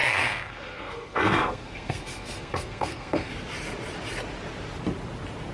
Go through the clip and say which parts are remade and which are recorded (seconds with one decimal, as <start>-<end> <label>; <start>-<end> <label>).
0.0-3.3 remade; 3.3-5.5 recorded